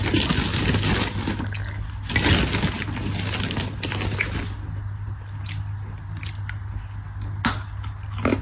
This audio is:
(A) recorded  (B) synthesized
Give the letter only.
A